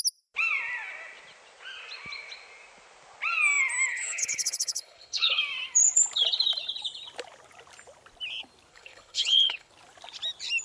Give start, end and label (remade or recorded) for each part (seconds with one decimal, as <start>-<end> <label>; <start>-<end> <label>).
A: 0.0-3.9 recorded; 3.9-5.4 remade; 5.4-8.7 recorded; 8.7-9.7 remade; 9.7-10.6 recorded